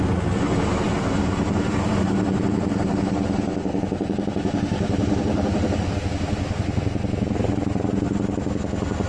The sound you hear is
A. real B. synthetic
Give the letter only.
A